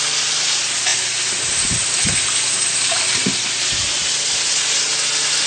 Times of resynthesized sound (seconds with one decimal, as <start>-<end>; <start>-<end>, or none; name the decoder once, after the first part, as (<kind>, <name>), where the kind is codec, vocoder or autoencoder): none